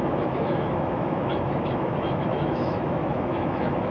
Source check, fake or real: fake